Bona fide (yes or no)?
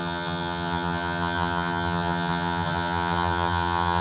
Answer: no